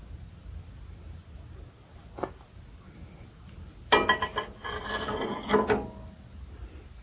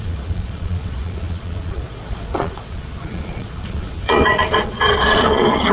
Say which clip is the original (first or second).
first